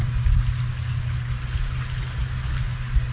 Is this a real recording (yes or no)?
yes